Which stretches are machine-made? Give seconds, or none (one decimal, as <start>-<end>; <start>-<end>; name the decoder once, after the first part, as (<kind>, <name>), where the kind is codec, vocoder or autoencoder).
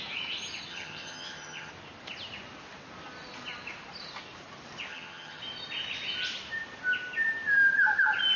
0.7-1.7 (vocoder, HiFi-GAN); 4.9-5.4